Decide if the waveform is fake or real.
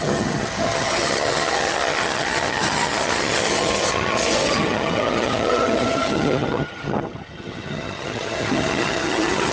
fake